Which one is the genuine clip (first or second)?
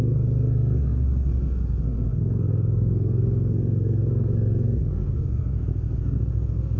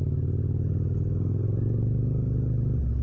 second